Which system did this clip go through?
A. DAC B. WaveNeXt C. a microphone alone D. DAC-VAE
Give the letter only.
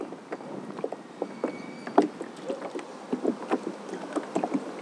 C